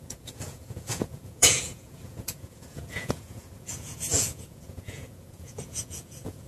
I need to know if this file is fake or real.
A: fake